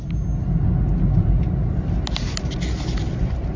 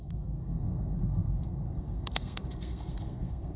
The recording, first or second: first